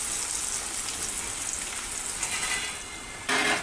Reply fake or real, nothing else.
real